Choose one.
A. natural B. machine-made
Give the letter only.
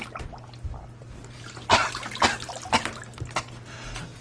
A